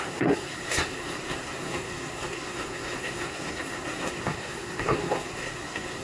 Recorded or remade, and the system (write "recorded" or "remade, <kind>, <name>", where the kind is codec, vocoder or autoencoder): remade, codec, SNAC